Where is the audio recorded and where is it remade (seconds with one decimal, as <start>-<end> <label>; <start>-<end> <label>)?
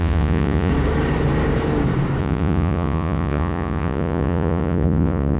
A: 0.0-0.7 remade; 0.7-2.2 recorded; 2.2-5.4 remade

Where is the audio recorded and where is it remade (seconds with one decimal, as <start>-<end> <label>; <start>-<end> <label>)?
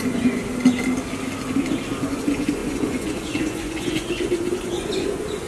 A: 0.0-0.4 remade; 0.4-2.0 recorded; 2.0-5.5 remade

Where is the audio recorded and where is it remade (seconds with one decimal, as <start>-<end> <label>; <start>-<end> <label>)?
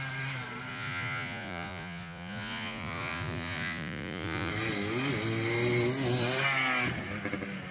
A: 0.0-0.7 recorded; 0.7-4.5 remade; 4.5-7.7 recorded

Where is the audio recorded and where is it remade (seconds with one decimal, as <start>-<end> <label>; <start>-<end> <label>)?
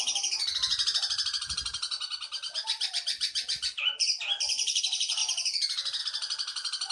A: 0.0-6.9 recorded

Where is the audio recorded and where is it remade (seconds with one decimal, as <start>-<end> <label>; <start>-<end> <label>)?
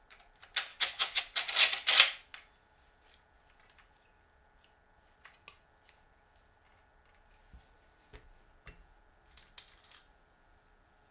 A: 0.0-0.7 recorded; 0.7-1.2 remade; 1.2-11.1 recorded